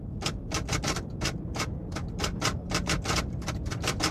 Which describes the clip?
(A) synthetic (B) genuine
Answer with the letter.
A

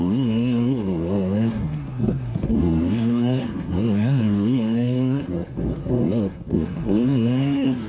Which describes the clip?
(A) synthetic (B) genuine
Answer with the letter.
A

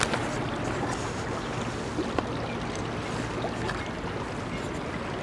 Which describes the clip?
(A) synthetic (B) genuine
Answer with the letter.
B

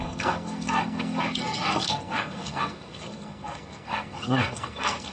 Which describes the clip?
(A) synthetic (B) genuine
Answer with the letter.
A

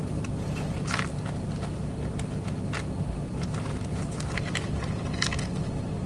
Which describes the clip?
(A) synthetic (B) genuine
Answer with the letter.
B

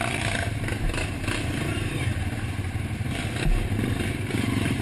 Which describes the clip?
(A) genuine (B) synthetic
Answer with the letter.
B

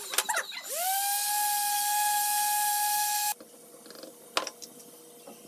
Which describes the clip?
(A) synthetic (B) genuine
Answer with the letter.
B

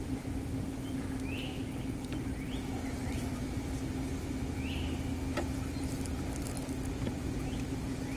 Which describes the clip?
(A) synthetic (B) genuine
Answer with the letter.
B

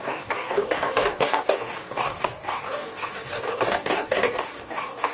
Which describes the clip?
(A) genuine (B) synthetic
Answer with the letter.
B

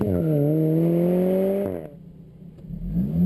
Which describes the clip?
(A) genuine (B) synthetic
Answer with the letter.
A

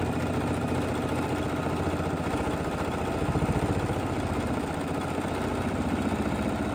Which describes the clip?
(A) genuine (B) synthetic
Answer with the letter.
A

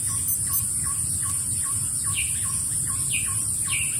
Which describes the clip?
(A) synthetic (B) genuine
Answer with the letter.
B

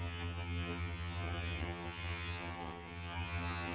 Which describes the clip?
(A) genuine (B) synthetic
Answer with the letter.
B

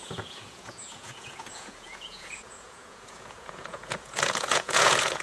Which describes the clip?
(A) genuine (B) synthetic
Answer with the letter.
B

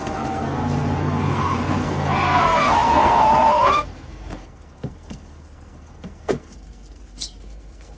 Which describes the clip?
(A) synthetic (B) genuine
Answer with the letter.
A